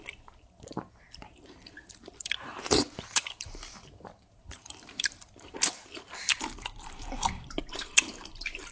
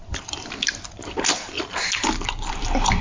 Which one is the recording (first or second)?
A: second